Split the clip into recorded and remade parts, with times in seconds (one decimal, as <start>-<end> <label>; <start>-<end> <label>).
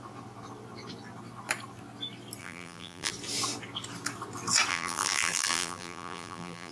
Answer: 0.0-2.4 recorded; 2.4-3.1 remade; 3.1-4.7 recorded; 4.7-6.7 remade